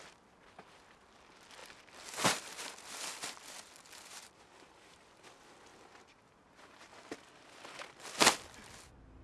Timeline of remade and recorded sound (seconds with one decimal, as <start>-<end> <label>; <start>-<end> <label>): 0.0-1.6 recorded; 1.6-4.4 remade; 4.4-5.7 recorded; 5.7-7.3 remade; 7.3-9.2 recorded